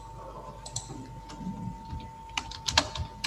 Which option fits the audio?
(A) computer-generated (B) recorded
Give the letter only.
B